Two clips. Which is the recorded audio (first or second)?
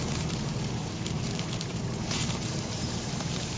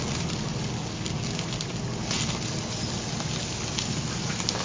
second